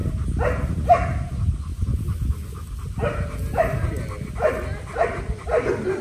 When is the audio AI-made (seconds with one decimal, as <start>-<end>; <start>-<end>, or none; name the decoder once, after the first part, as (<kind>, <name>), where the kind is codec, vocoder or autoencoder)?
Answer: none